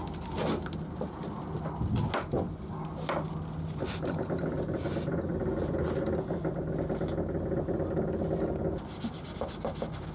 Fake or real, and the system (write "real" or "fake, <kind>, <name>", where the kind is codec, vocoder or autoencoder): real